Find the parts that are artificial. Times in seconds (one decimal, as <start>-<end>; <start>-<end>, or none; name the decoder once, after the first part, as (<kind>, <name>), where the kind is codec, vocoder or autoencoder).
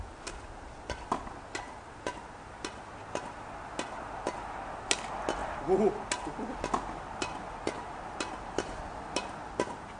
none